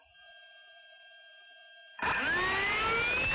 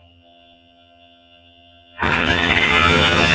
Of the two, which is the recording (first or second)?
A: first